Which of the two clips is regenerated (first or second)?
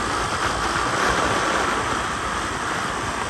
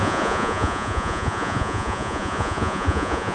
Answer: second